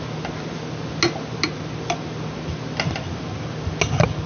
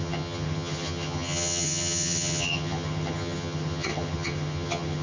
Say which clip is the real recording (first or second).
first